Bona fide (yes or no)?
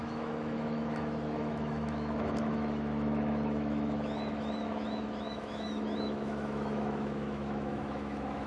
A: no